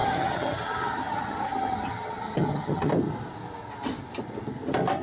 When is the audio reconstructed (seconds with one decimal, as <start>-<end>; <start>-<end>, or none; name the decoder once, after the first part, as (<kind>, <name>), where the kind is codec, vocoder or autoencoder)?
0.0-2.9 (vocoder, HiFi-GAN)

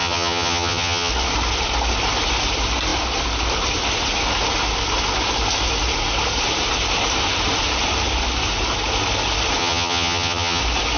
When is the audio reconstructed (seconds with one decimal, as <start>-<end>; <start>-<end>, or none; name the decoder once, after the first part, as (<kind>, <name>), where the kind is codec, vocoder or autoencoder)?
0.0-1.1 (vocoder, HiFi-GAN); 9.6-10.6

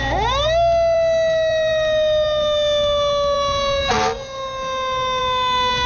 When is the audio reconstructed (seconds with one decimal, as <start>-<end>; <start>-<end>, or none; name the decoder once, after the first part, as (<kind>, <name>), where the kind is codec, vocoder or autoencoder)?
none

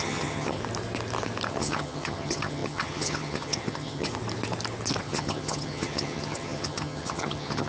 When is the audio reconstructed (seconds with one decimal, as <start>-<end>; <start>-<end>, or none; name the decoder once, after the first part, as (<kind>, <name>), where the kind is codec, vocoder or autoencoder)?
0.0-0.6 (vocoder, HiFi-GAN); 1.5-4.1; 5.0-7.7